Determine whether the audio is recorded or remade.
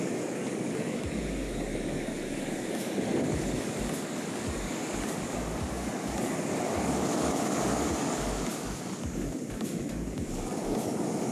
remade